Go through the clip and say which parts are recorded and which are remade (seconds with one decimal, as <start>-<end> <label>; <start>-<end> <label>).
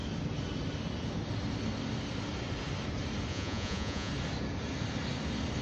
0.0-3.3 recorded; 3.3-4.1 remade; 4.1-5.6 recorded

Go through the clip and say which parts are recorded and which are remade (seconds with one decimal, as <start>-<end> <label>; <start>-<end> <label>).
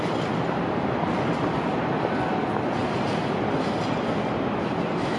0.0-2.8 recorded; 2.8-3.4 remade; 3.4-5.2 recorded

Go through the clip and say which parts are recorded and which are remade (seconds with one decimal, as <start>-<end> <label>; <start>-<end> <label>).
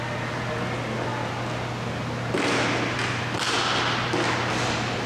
0.0-5.1 recorded